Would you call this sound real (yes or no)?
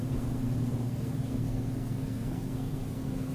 no